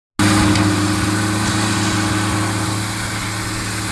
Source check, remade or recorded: recorded